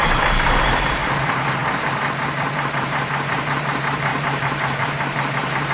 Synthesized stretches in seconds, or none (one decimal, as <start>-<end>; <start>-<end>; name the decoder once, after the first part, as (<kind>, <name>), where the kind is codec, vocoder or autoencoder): 0.0-1.6 (vocoder, BigVGAN v2); 2.1-5.7